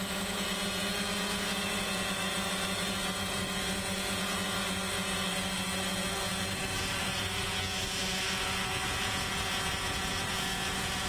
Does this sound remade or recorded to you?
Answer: remade